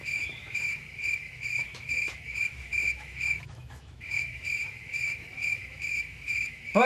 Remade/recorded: remade